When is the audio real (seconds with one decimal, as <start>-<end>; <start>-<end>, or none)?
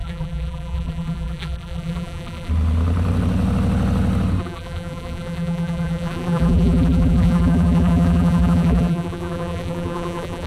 2.5-4.4